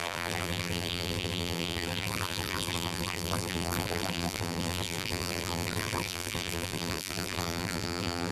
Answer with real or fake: fake